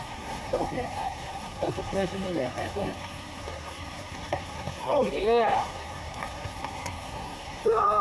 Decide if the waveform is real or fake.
fake